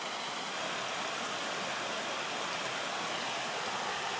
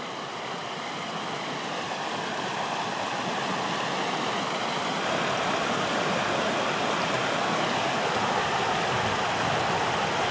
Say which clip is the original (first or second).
first